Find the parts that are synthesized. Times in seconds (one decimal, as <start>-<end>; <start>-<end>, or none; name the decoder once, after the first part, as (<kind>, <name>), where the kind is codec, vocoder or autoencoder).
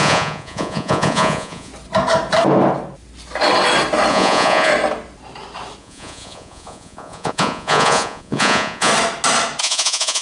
0.0-1.7 (vocoder, Vocos); 4.1-4.7; 5.8-8.9; 9.6-10.2